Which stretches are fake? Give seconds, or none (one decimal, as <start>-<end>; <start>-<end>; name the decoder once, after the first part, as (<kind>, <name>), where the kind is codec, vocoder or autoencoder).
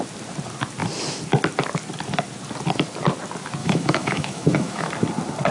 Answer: 3.6-4.9 (autoencoder, DAC-VAE)